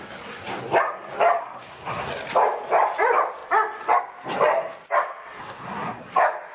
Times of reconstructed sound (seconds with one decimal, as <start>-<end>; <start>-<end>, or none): 1.4-2.1; 5.4-6.0